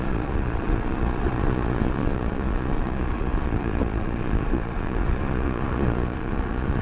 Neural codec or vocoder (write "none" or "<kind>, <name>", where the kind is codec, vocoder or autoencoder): vocoder, Vocos